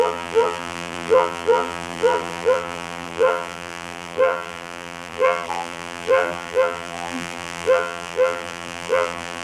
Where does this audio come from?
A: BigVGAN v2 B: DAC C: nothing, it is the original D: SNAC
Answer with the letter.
A